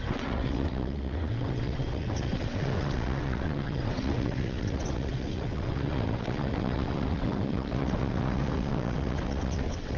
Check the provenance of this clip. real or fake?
fake